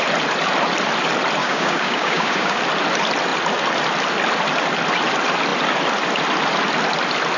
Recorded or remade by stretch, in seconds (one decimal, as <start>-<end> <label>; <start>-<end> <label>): 0.0-1.4 recorded; 1.4-2.6 remade; 2.6-7.4 recorded